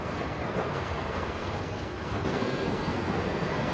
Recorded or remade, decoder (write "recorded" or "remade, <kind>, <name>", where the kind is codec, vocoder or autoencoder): remade, codec, SNAC